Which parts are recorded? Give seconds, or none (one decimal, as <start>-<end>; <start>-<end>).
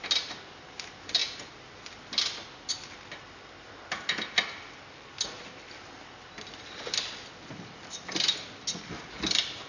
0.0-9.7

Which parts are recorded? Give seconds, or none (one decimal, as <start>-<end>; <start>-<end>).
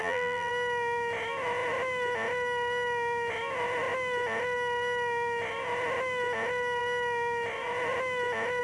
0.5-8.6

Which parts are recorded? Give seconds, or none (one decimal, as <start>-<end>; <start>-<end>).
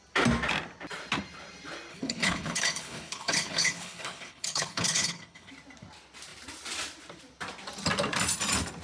0.0-1.9; 5.5-8.8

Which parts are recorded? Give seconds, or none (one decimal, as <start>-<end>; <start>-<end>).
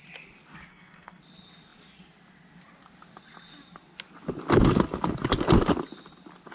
0.0-0.7; 1.2-6.5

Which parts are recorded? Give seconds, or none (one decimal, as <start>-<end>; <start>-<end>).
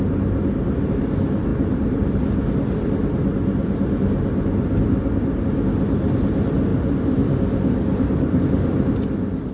0.0-9.5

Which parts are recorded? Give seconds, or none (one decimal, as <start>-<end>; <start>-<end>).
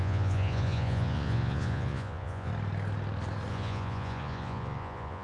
2.5-3.5